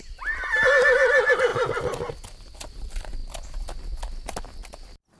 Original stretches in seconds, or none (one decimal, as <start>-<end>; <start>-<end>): 0.0-5.2